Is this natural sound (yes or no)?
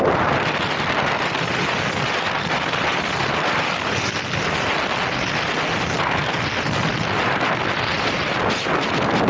yes